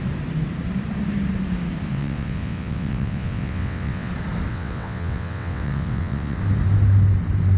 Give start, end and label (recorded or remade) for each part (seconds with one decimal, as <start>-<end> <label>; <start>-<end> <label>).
0.0-1.9 recorded; 1.9-4.1 remade; 4.1-4.5 recorded; 4.5-6.4 remade; 6.4-7.6 recorded